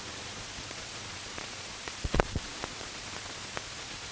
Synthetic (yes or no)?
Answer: yes